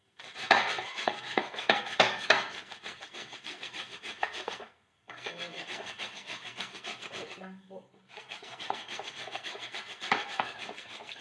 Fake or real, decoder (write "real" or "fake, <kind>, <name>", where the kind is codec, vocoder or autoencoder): fake, codec, SNAC